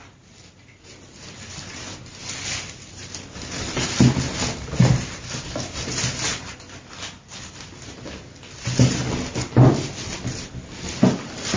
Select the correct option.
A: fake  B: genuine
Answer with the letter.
B